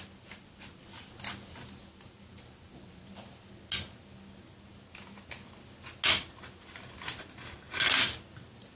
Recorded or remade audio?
recorded